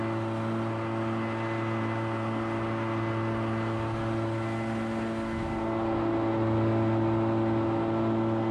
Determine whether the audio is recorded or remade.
recorded